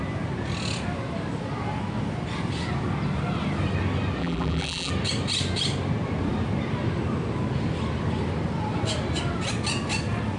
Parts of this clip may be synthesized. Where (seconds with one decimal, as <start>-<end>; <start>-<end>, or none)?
4.2-4.9